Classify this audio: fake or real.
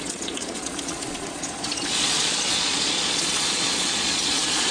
fake